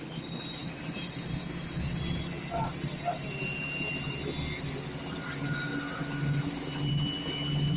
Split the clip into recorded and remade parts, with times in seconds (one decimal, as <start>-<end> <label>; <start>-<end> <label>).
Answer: 0.0-0.6 recorded; 0.6-1.4 remade; 1.4-7.8 recorded